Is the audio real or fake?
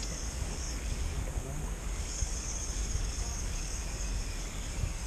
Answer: fake